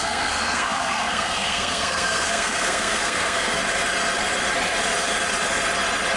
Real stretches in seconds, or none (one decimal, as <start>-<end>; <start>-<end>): 3.6-6.2